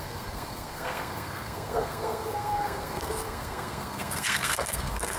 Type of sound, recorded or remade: remade